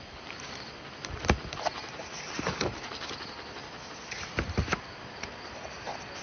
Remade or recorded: recorded